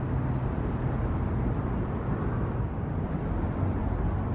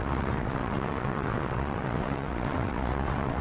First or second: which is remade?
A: second